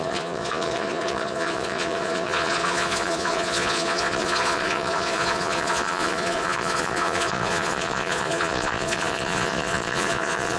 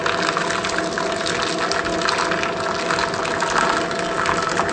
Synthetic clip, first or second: first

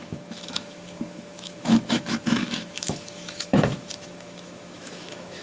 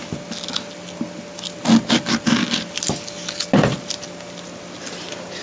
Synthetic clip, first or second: first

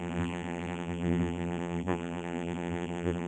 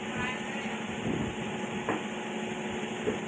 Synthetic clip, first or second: first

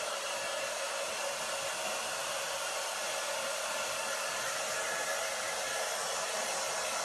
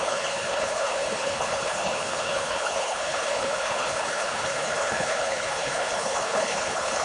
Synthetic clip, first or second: second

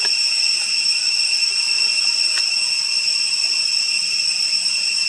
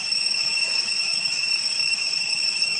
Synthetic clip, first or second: second